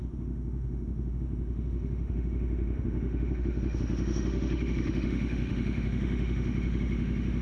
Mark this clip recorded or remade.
remade